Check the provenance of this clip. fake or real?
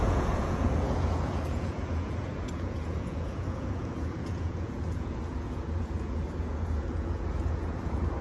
fake